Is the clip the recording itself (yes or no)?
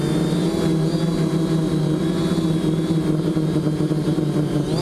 no